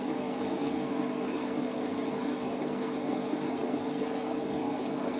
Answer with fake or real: fake